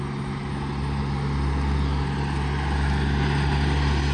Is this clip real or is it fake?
real